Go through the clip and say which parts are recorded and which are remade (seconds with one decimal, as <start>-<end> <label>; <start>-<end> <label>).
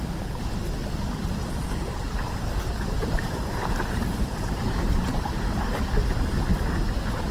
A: 0.0-1.2 recorded; 1.2-5.6 remade; 5.6-7.3 recorded